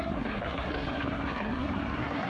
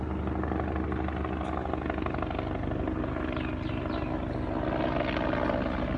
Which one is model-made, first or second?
first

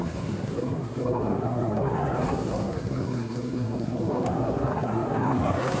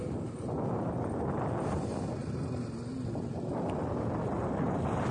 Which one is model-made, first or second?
first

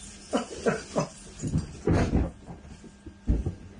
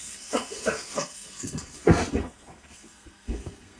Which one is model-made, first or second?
second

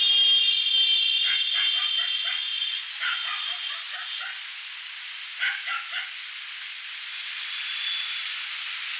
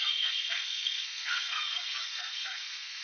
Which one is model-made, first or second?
second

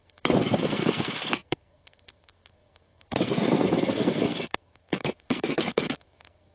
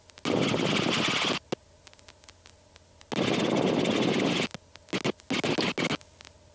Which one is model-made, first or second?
first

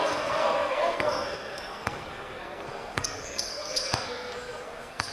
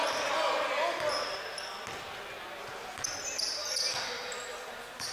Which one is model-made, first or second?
first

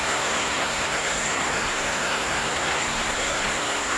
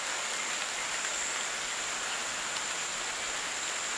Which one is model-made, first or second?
first